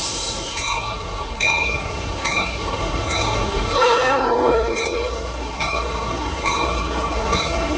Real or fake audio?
fake